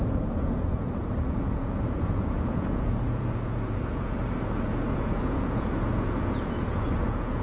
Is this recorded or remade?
remade